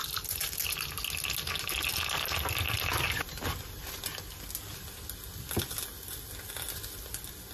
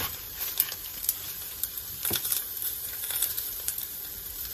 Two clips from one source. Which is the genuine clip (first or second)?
first